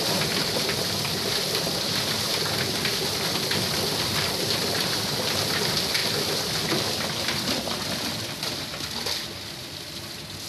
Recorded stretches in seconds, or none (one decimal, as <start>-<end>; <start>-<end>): 0.0-2.9; 4.4-10.5